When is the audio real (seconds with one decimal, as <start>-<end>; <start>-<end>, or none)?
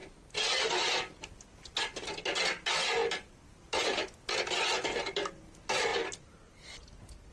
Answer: 0.0-7.3